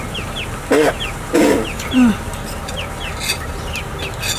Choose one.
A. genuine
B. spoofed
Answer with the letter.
A